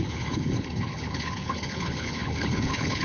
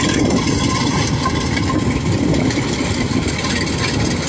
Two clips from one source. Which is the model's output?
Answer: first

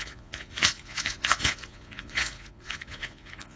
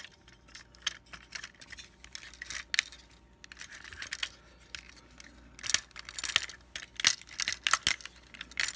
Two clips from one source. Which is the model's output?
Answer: first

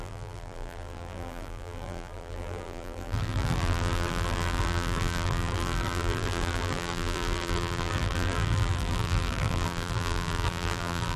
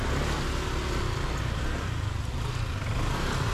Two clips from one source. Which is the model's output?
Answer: first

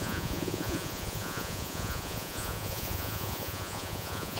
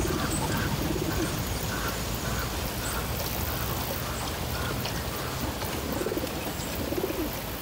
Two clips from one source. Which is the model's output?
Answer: first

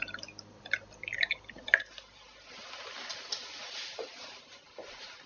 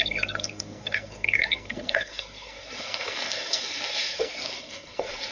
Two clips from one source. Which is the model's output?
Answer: second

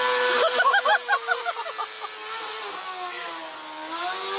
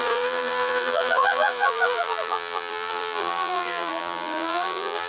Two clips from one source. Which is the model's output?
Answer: second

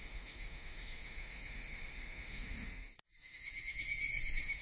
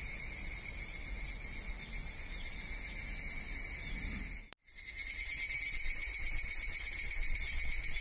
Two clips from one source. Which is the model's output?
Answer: first